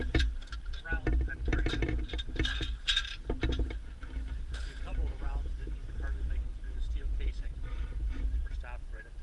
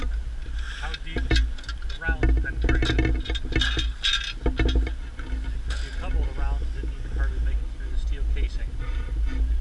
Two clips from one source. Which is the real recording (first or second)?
second